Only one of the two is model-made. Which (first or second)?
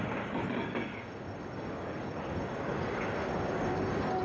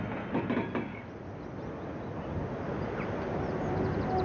first